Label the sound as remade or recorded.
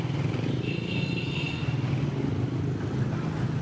recorded